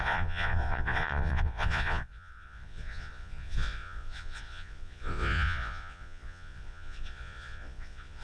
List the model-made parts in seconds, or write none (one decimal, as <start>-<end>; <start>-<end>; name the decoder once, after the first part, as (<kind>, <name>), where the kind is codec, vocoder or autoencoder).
0.0-8.2 (vocoder, Vocos)